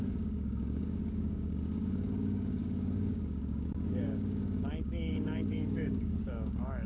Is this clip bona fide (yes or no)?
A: no